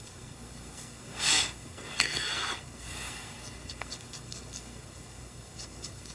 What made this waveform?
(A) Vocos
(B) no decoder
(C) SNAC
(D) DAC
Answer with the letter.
C